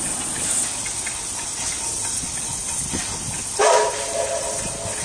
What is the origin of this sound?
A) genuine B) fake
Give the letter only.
A